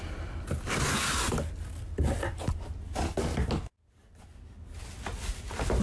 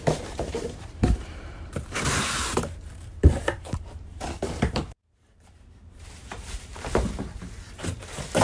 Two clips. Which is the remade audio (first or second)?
second